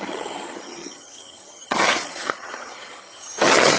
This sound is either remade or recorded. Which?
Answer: remade